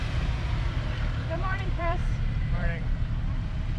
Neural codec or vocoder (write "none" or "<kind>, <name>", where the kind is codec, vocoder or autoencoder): vocoder, BigVGAN v2